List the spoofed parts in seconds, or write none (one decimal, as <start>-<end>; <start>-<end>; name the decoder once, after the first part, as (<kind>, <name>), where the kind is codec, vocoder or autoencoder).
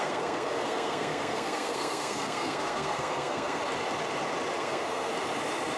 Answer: 0.0-3.6 (codec, SNAC); 4.6-5.1